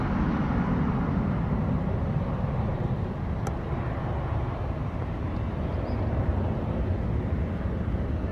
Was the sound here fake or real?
real